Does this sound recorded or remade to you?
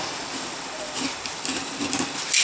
recorded